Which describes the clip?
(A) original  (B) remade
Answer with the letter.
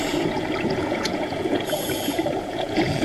B